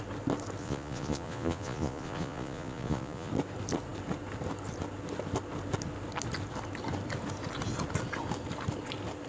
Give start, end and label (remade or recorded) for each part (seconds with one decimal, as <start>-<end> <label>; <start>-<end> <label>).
0.0-0.6 recorded; 0.6-3.3 remade; 3.3-9.3 recorded